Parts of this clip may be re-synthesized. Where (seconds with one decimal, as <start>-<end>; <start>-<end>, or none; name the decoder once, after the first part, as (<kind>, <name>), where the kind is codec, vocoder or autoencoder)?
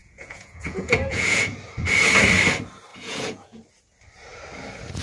0.0-1.4 (vocoder, Vocos); 2.9-3.6